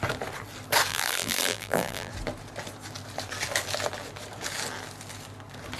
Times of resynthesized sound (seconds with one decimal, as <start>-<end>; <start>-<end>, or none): 0.9-2.1